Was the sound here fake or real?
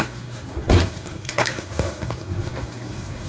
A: fake